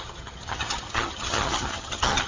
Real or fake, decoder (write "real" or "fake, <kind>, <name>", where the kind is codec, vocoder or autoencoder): fake, vocoder, HiFi-GAN